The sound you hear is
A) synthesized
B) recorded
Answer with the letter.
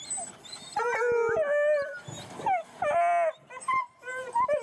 B